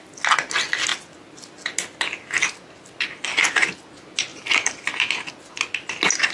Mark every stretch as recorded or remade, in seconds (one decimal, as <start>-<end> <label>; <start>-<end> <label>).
0.0-4.3 recorded; 4.3-5.3 remade; 5.3-6.3 recorded